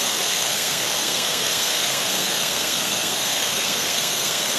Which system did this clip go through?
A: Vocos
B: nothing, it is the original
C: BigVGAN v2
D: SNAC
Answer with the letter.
D